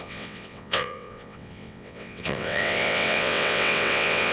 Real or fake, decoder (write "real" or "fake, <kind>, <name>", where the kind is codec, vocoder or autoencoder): fake, vocoder, WaveNeXt